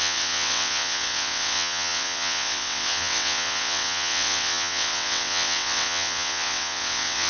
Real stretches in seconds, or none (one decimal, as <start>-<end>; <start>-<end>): none